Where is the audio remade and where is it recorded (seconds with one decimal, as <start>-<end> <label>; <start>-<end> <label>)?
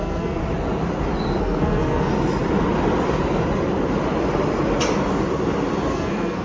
0.0-0.4 remade; 0.4-1.4 recorded; 1.4-2.1 remade; 2.1-5.9 recorded; 5.9-6.4 remade